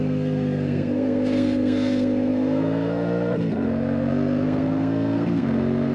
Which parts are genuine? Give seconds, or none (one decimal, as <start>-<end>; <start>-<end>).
none